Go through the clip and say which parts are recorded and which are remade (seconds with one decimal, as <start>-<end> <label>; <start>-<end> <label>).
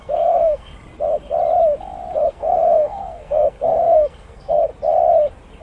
0.0-0.7 remade; 0.7-2.2 recorded; 2.2-4.7 remade; 4.7-5.6 recorded